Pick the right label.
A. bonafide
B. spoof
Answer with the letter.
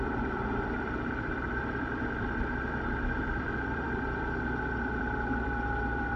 B